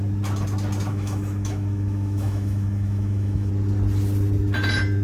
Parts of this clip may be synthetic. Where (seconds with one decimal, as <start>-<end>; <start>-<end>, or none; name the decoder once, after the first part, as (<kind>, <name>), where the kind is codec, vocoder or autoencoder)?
0.9-3.5 (autoencoder, DAC-VAE)